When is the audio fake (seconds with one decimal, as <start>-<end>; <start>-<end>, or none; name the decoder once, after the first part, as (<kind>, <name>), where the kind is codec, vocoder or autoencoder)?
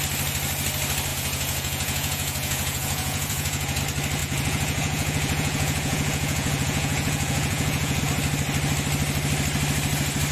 1.1-3.8 (vocoder, Vocos); 4.2-8.0